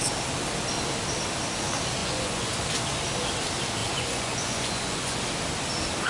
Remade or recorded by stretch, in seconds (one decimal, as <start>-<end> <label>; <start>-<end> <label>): 0.0-2.0 recorded; 2.0-2.5 remade; 2.5-3.8 recorded; 3.8-5.2 remade; 5.2-6.1 recorded